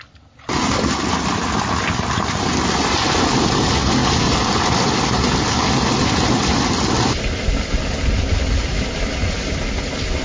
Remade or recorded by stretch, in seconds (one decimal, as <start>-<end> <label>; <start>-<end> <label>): 0.0-10.2 recorded